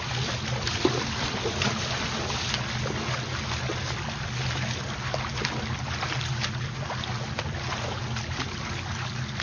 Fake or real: real